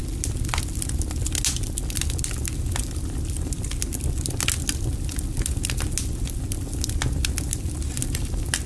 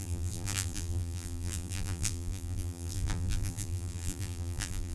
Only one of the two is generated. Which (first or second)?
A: second